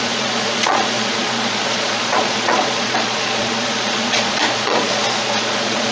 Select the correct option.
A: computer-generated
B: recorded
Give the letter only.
A